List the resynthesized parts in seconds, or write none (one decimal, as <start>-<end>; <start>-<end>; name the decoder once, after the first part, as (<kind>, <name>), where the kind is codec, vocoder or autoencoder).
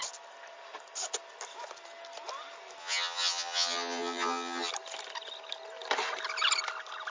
2.8-4.7 (vocoder, HiFi-GAN)